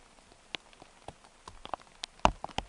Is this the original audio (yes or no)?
yes